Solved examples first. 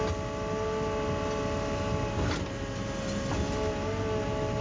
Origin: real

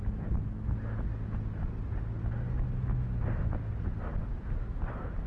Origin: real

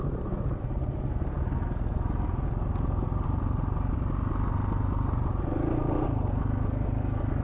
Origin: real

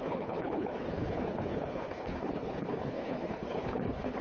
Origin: fake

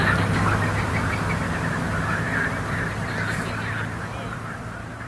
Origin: real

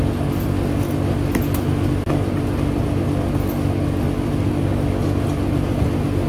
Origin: real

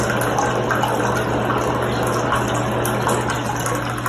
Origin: real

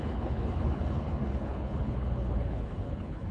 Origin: fake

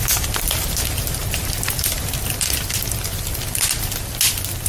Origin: real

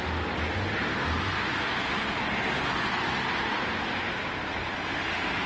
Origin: real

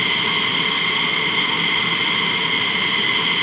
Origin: real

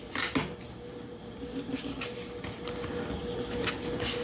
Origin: real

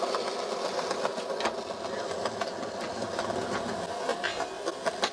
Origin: real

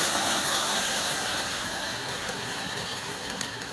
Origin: fake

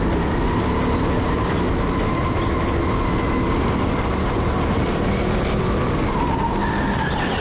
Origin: real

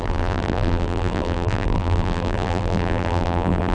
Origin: fake